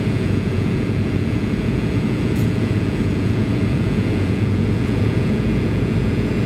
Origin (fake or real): fake